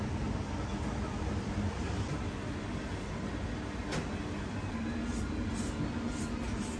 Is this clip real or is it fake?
real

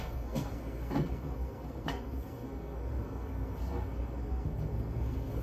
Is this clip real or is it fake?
fake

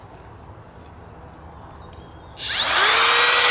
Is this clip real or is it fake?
real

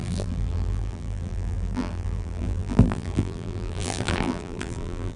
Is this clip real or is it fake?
fake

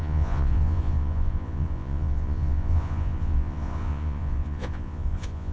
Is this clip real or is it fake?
fake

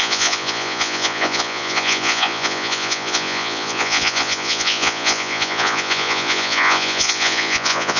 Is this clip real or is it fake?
fake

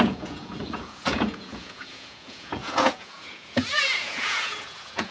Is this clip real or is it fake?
fake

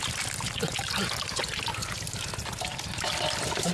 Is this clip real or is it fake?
real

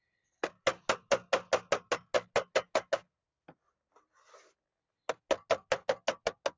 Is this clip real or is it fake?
real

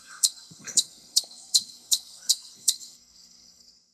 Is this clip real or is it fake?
fake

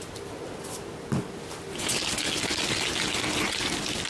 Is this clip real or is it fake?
real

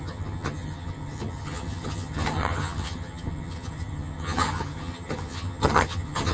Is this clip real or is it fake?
fake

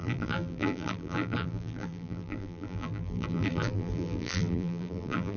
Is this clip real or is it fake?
fake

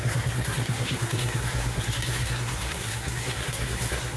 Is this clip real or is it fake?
fake